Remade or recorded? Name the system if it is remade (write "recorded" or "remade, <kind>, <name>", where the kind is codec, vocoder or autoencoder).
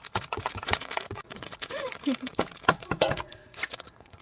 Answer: remade, vocoder, Vocos